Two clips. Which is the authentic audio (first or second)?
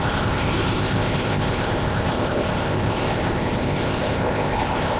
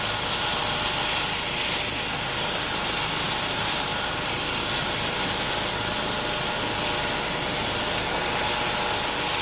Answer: second